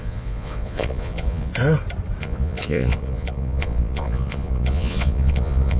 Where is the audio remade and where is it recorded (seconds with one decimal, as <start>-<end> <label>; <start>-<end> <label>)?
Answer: 0.0-1.5 remade; 1.5-2.2 recorded; 2.2-5.8 remade